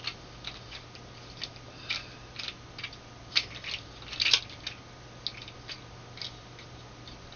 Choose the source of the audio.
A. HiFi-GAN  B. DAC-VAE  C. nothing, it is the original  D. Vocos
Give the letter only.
C